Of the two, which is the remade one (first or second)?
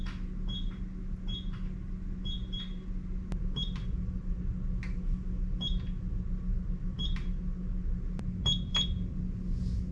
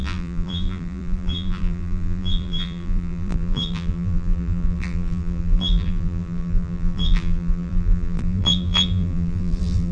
second